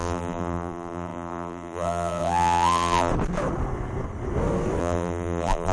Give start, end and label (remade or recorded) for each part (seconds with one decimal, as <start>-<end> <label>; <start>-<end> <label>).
0.0-3.1 remade; 3.1-4.8 recorded; 4.8-5.7 remade